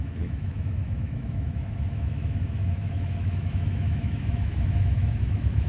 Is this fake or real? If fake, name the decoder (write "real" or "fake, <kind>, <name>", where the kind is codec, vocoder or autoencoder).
fake, autoencoder, DAC-VAE